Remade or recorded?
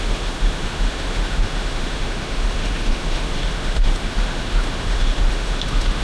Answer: remade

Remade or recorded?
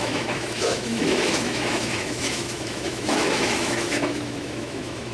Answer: remade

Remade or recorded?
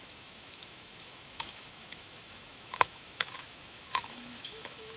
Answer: remade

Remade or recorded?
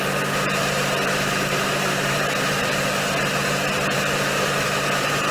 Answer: recorded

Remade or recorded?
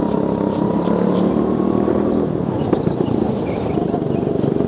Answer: recorded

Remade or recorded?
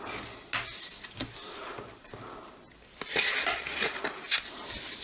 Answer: recorded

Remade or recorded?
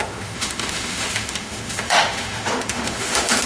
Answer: remade